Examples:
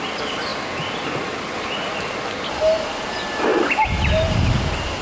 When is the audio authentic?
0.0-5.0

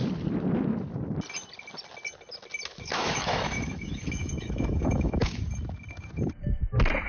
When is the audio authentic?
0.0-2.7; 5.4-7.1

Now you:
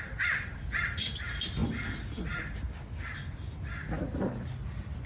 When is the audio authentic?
0.0-5.1